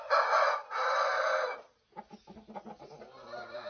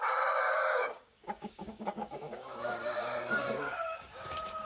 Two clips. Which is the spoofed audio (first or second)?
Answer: second